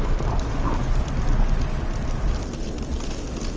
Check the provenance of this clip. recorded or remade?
recorded